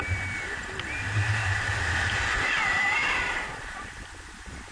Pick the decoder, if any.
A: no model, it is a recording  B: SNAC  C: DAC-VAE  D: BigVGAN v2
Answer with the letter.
A